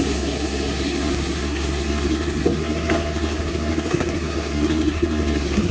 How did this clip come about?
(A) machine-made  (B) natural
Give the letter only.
A